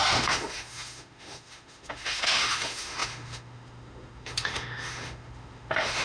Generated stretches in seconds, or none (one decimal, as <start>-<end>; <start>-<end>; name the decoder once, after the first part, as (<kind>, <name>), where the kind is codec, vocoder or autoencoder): 0.0-6.0 (autoencoder, DAC-VAE)